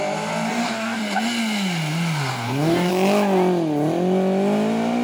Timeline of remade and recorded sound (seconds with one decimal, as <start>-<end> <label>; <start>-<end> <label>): 0.0-0.5 recorded; 0.5-1.0 remade; 1.0-2.3 recorded; 2.3-2.9 remade; 2.9-5.0 recorded